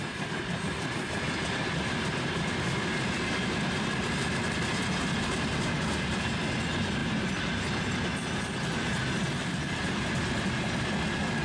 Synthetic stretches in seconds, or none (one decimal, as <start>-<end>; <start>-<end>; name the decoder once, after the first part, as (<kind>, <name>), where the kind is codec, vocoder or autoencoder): none